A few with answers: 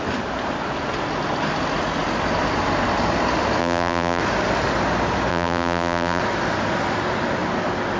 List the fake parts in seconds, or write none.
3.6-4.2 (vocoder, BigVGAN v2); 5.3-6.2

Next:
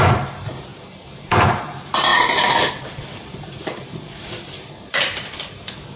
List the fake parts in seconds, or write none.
0.0-6.0 (vocoder, BigVGAN v2)

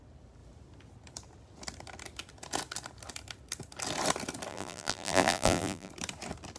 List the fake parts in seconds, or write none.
4.5-5.9 (vocoder, BigVGAN v2)

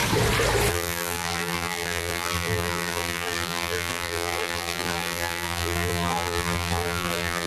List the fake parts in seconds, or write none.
0.7-7.5 (vocoder, BigVGAN v2)

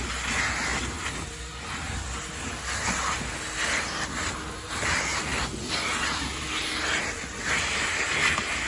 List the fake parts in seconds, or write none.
none

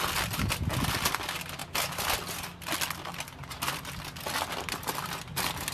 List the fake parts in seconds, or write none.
none

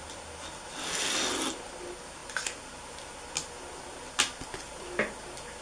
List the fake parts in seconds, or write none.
none

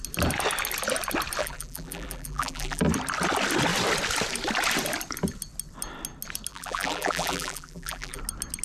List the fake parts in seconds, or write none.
1.4-2.8 (vocoder, BigVGAN v2); 6.5-8.2